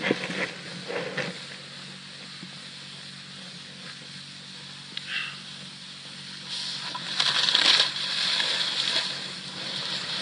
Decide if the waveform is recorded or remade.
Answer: recorded